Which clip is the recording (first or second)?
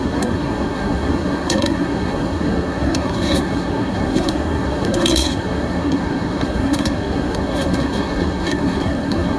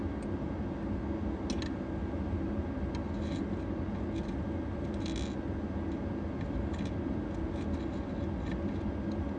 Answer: second